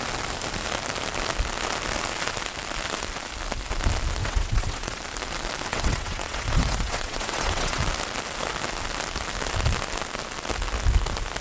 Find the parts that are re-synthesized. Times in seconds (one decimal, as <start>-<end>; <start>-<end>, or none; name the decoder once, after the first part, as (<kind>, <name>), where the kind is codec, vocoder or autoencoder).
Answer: 4.2-5.0 (vocoder, WaveNeXt); 5.7-7.8